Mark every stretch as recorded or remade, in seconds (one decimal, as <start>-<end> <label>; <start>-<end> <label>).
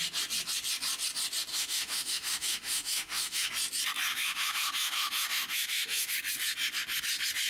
0.0-1.5 recorded; 1.5-3.5 remade; 3.5-4.1 recorded; 4.1-6.1 remade; 6.1-7.5 recorded